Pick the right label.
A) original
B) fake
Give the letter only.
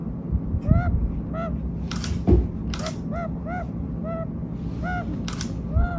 A